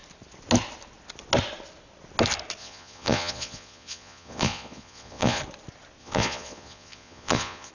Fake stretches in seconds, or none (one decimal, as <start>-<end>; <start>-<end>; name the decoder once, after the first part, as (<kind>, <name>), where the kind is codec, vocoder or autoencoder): 2.6-5.4 (vocoder, Vocos); 6.0-7.7